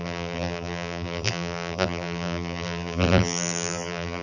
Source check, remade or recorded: remade